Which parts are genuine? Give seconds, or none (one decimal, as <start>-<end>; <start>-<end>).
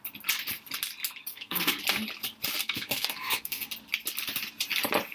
0.0-1.3; 1.8-2.6; 3.7-5.1